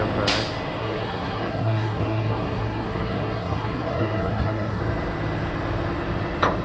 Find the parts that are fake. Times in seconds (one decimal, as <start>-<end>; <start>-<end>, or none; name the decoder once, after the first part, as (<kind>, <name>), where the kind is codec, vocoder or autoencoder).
0.8-4.8 (codec, SNAC)